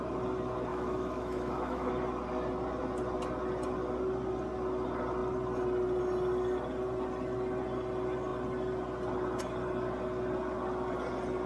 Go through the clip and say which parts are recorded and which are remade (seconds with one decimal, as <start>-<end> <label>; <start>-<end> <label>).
0.0-0.7 recorded; 0.7-1.9 remade; 1.9-11.5 recorded

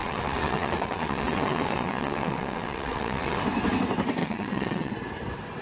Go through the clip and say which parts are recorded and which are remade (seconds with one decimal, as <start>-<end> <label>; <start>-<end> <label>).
0.0-3.4 remade; 3.4-4.2 recorded; 4.2-4.9 remade; 4.9-5.6 recorded

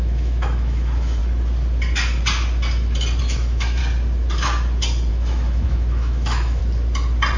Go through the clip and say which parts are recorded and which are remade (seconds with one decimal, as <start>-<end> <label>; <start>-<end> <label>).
0.0-1.2 remade; 1.2-3.2 recorded; 3.2-3.8 remade; 3.8-5.1 recorded; 5.1-6.6 remade; 6.6-7.4 recorded

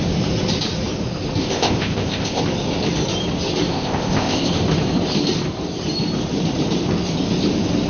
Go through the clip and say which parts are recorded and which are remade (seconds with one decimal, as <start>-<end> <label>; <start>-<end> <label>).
0.0-1.4 recorded; 1.4-2.4 remade; 2.4-3.7 recorded; 3.7-4.5 remade; 4.5-7.9 recorded

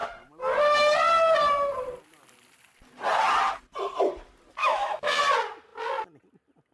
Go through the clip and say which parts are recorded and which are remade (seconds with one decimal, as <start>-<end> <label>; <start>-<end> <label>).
0.0-4.6 recorded; 4.6-5.2 remade; 5.2-6.7 recorded

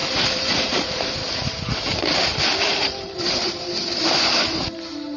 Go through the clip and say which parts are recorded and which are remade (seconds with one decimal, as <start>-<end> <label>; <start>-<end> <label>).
0.0-1.2 remade; 1.2-1.9 recorded; 1.9-5.2 remade

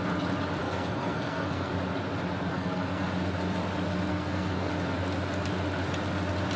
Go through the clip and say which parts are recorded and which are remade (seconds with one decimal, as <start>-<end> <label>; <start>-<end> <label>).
0.0-0.6 recorded; 0.6-1.7 remade; 1.7-2.5 recorded; 2.5-3.1 remade; 3.1-4.1 recorded; 4.1-4.7 remade; 4.7-6.6 recorded

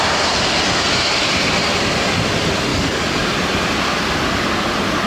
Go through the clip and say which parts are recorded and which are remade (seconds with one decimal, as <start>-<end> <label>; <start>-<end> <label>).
0.0-2.7 recorded; 2.7-3.3 remade; 3.3-5.1 recorded